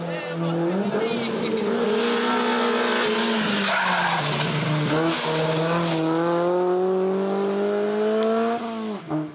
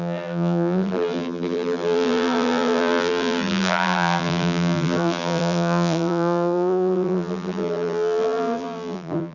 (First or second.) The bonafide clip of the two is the first